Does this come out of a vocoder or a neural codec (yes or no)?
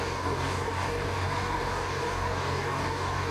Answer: yes